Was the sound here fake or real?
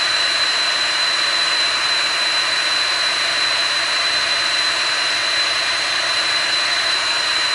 fake